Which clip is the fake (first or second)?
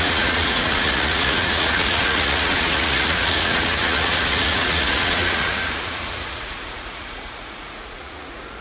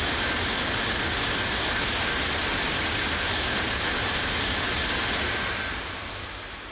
first